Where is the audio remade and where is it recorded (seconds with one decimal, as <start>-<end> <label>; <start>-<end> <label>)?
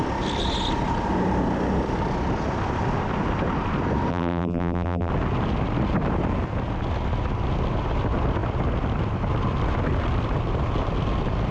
0.0-4.1 recorded; 4.1-5.1 remade; 5.1-11.5 recorded